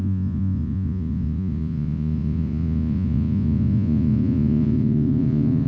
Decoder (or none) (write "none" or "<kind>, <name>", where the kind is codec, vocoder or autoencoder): vocoder, Vocos